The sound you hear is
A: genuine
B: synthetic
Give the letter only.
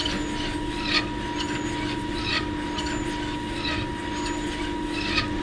A